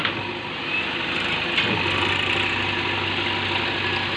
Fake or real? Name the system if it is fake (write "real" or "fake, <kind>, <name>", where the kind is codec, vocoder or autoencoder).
real